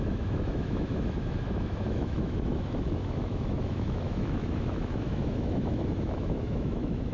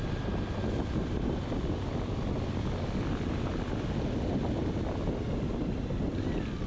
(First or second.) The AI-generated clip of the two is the first